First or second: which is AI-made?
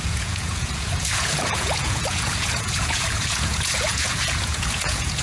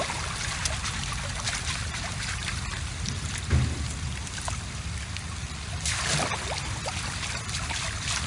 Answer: first